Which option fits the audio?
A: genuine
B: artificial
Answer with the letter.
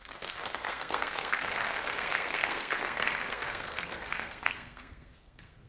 B